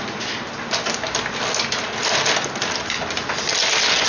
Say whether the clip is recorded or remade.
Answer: recorded